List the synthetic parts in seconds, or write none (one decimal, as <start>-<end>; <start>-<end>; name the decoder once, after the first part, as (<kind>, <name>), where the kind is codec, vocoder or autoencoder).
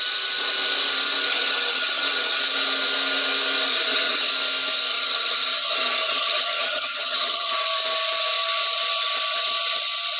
1.3-2.4 (vocoder, HiFi-GAN); 3.7-4.3; 4.9-7.5